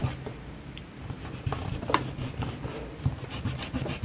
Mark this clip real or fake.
real